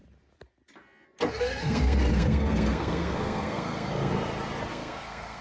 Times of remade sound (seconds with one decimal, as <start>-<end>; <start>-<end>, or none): 1.3-4.1; 4.7-5.4